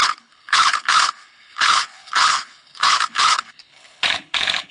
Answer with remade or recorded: remade